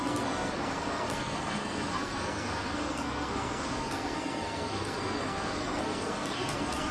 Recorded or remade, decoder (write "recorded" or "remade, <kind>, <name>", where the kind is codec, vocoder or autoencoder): remade, codec, SNAC